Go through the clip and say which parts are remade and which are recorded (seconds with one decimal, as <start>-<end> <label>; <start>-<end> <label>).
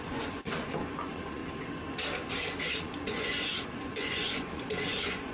0.0-1.4 remade; 1.4-2.3 recorded; 2.3-5.3 remade